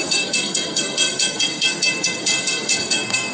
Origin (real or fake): fake